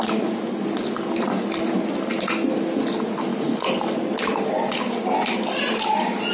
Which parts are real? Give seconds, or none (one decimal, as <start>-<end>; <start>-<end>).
0.0-6.3